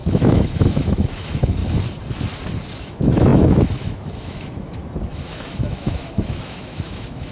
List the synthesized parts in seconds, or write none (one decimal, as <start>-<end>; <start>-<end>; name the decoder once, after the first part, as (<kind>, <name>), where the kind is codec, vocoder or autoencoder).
0.0-1.6 (autoencoder, DAC-VAE); 2.8-7.3